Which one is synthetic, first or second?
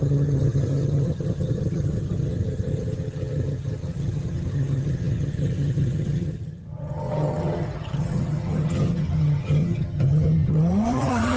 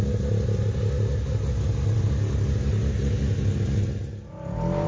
first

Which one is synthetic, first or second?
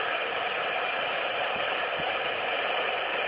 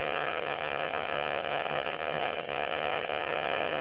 second